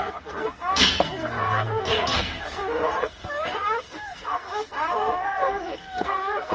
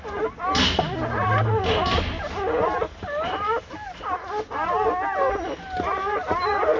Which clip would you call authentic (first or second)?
second